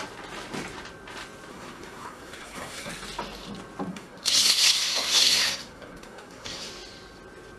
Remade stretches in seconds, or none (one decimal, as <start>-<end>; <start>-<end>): 1.5-2.9; 3.9-6.7